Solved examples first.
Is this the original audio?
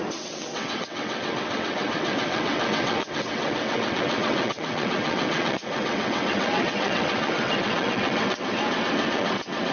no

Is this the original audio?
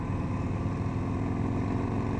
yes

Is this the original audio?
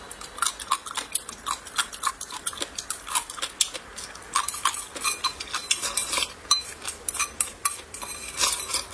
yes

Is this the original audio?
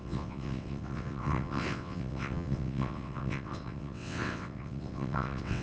no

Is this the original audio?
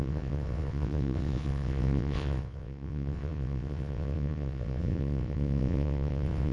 no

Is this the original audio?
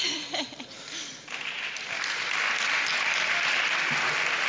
yes